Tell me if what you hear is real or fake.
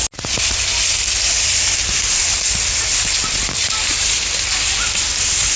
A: real